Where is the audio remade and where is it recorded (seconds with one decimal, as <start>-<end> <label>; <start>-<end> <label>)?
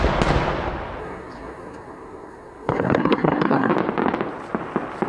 0.0-1.0 recorded; 1.0-3.7 remade; 3.7-5.1 recorded